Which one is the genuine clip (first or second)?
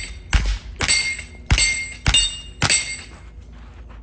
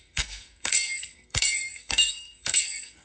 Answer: first